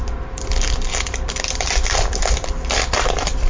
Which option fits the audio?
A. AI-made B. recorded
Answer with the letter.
B